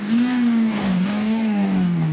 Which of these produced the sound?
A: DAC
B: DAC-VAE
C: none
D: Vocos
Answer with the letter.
A